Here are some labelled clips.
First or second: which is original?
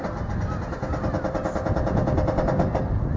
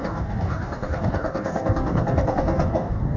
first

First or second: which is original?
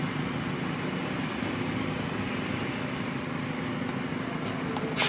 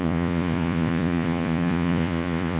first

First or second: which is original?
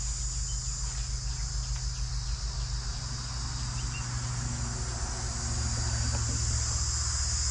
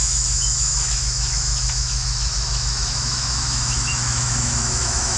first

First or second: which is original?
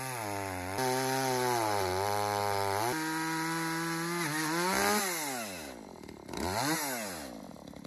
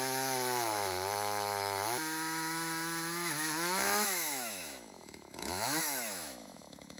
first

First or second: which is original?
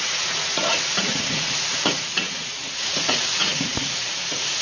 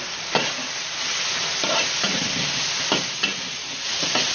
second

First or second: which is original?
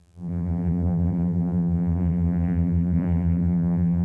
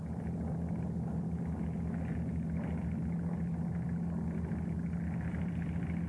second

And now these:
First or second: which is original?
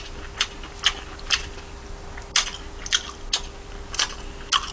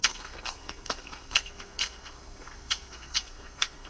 first